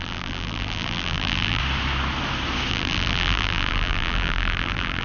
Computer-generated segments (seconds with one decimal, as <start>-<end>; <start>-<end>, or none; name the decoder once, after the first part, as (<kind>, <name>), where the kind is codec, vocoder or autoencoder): 0.0-1.6 (vocoder, BigVGAN v2); 2.7-5.0